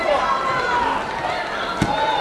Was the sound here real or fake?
real